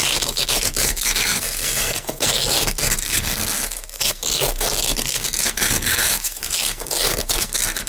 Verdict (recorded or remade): remade